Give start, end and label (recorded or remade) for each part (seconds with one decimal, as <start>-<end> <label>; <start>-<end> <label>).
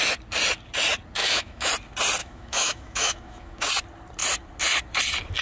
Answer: 0.0-1.2 recorded; 1.2-1.7 remade; 1.7-2.2 recorded; 2.2-3.7 remade; 3.7-5.4 recorded